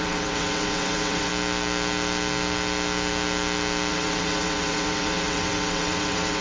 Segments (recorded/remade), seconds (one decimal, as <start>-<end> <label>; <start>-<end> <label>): 0.0-1.3 remade; 1.3-3.9 recorded; 3.9-6.4 remade